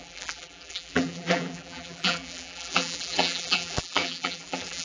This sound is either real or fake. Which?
fake